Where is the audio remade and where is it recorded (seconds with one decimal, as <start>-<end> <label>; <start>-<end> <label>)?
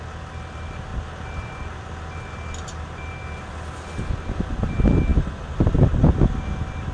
0.0-6.9 recorded